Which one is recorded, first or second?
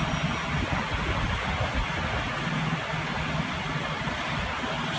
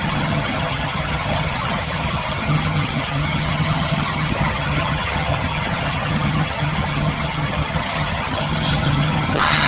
first